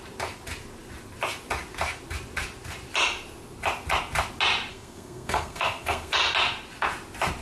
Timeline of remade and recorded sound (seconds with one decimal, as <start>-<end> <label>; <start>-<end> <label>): 0.0-4.7 recorded; 4.7-6.1 remade; 6.1-7.4 recorded